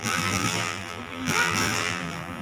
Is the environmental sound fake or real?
fake